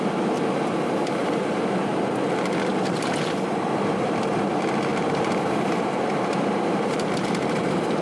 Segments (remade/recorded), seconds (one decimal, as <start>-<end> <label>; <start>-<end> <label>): 0.0-1.2 recorded; 1.2-1.9 remade; 1.9-4.9 recorded; 4.9-8.0 remade